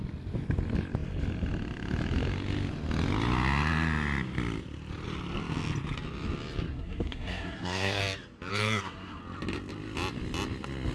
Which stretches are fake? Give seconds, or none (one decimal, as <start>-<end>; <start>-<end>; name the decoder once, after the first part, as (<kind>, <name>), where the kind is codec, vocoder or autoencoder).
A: 6.7-8.0 (codec, SNAC); 8.5-9.2